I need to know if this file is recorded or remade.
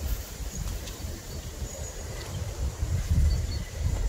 remade